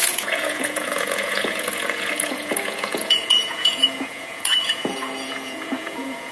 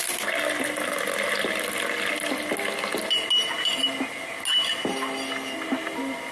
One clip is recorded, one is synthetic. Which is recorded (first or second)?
second